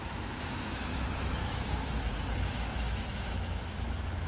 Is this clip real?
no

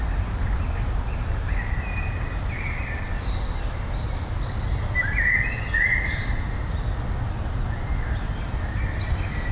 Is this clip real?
yes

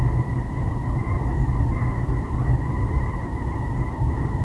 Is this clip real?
yes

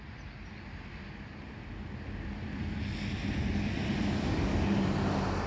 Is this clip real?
yes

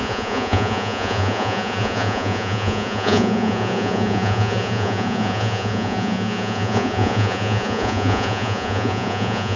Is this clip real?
no